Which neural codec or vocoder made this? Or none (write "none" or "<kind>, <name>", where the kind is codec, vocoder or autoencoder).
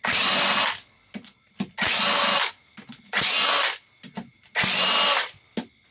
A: none